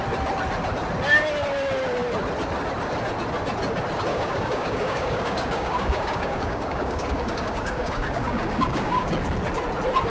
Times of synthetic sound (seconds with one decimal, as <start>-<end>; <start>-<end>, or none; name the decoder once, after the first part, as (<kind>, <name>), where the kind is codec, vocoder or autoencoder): 4.1-9.1 (codec, DAC)